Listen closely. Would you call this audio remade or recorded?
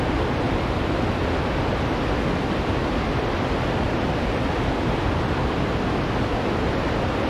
recorded